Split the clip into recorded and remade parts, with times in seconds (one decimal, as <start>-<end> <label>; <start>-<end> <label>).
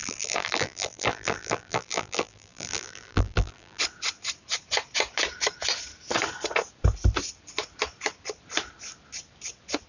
0.0-3.8 remade; 3.8-9.9 recorded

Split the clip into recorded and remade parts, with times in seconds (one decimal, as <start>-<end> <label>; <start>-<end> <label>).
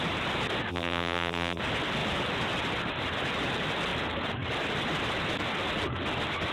0.0-0.7 recorded; 0.7-1.6 remade; 1.6-6.5 recorded